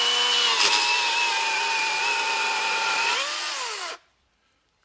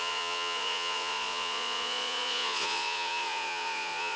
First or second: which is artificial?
second